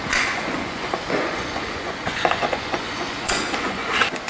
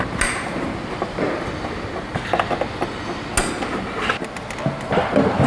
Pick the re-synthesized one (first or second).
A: first